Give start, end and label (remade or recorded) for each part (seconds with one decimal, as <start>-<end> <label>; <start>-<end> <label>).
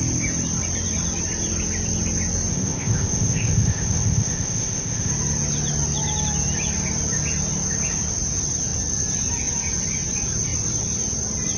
0.0-2.5 recorded; 2.5-5.1 remade; 5.1-11.6 recorded